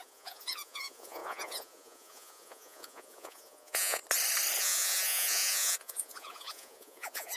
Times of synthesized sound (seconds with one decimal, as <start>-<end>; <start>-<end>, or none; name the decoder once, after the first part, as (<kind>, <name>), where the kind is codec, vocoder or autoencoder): 0.0-4.0 (vocoder, Vocos); 4.6-7.4